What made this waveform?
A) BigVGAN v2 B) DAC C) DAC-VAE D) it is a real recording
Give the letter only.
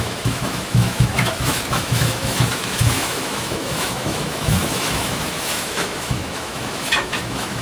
C